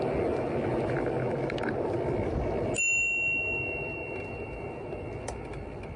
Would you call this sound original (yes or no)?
yes